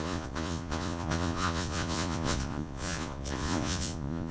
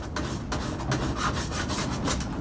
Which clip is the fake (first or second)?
first